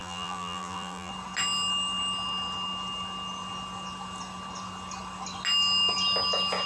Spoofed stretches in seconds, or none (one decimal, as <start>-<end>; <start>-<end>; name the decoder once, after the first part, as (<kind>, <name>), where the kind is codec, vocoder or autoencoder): 0.0-1.1 (vocoder, BigVGAN v2)

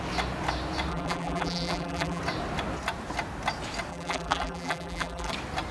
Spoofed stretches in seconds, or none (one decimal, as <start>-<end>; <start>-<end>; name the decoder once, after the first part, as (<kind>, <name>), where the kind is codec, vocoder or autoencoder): 0.9-2.2 (vocoder, BigVGAN v2); 3.9-5.3